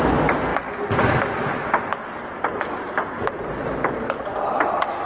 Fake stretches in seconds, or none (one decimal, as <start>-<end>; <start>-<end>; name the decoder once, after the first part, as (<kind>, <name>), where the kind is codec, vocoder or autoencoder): none